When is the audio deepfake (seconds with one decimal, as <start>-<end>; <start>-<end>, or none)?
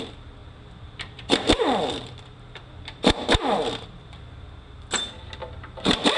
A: 0.4-4.1